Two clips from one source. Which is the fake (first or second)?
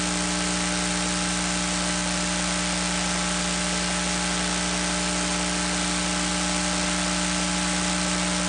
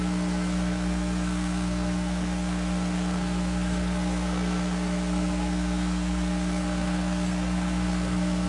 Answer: second